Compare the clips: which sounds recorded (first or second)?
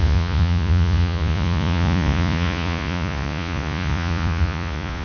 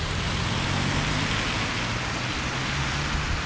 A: second